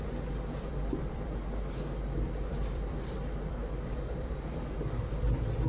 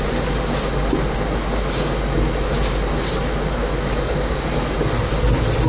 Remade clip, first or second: first